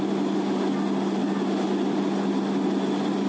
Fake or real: real